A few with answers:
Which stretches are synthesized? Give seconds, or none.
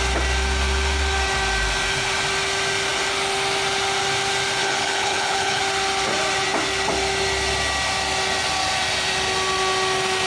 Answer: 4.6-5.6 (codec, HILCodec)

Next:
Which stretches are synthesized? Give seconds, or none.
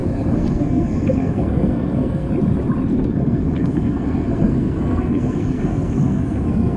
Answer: 0.0-2.3 (codec, SNAC); 2.9-6.8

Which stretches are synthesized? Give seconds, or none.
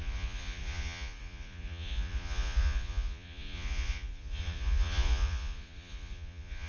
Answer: 0.0-6.7 (vocoder, Vocos)